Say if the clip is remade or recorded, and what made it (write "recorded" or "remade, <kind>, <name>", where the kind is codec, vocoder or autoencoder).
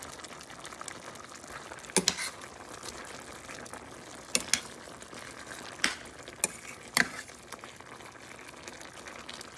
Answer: recorded